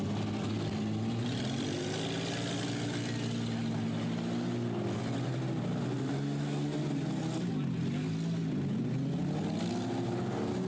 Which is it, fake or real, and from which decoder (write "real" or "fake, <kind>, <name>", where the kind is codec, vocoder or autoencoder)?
real